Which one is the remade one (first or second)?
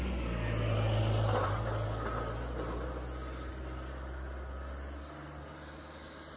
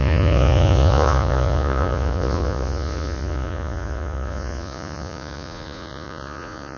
second